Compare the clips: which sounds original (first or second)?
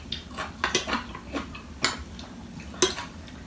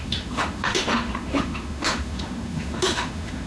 first